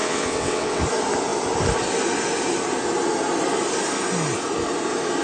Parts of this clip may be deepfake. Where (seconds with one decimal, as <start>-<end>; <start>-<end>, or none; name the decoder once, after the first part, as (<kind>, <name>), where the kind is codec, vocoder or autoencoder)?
0.0-0.8 (vocoder, WaveNeXt)